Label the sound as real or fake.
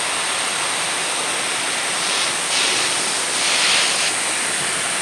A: real